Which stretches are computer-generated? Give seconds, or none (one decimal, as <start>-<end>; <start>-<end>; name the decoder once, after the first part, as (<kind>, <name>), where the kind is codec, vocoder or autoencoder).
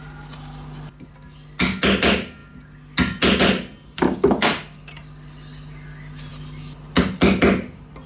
none